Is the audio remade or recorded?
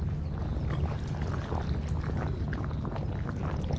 recorded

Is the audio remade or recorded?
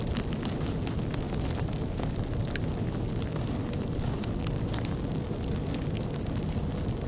recorded